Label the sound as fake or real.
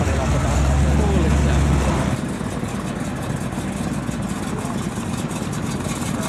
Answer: real